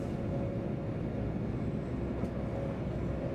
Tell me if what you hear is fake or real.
real